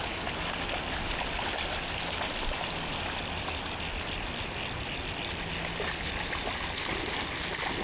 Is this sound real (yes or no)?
yes